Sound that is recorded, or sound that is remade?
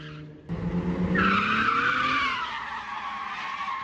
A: recorded